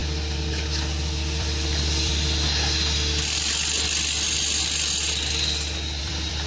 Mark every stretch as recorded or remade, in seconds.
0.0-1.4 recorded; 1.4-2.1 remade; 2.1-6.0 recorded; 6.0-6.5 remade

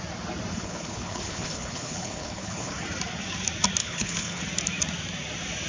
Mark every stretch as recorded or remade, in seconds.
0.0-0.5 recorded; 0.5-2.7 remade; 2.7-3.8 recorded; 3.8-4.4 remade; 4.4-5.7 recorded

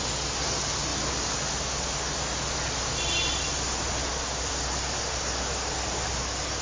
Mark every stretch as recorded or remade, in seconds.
0.0-6.6 recorded

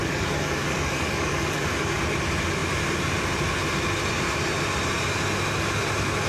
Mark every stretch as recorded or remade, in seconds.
0.0-1.7 remade; 1.7-6.3 recorded